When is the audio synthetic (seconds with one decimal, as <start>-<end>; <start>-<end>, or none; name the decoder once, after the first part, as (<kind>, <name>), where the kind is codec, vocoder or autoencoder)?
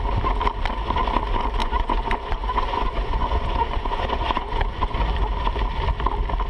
1.6-5.0 (vocoder, Vocos)